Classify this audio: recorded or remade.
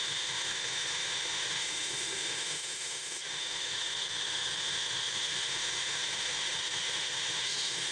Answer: remade